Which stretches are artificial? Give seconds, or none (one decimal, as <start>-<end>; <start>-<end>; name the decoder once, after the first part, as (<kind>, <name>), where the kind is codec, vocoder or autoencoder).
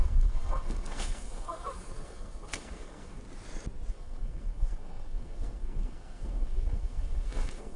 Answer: 0.0-3.2 (codec, SNAC); 3.9-7.8